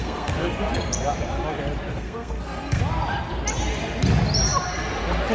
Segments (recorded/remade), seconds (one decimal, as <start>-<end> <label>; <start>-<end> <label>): 0.0-0.7 remade; 0.7-1.9 recorded; 1.9-2.8 remade; 2.8-5.3 recorded